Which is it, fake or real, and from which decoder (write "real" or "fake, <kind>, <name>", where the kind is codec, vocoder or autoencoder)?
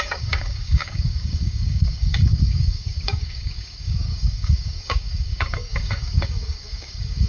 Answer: fake, codec, DAC